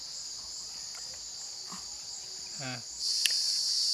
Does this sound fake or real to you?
real